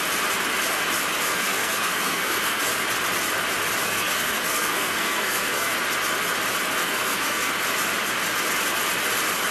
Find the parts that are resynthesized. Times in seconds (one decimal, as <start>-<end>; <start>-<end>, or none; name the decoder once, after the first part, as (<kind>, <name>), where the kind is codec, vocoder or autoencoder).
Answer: 1.3-2.6 (codec, SNAC); 3.8-5.7; 6.8-7.5